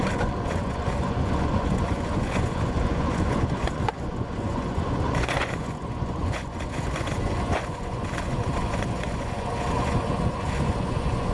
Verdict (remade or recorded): remade